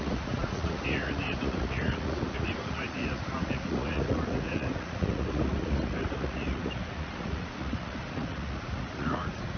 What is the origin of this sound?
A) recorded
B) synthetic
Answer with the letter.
B